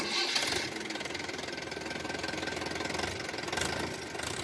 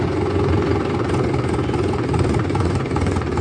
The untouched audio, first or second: first